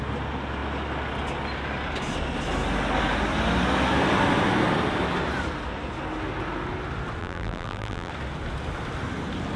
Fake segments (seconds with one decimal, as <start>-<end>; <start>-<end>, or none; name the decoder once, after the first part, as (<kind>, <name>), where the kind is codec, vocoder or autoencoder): 7.2-8.1 (vocoder, BigVGAN v2)